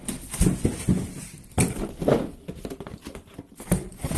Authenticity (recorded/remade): recorded